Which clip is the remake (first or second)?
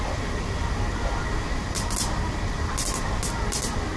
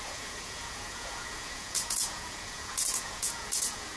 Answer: second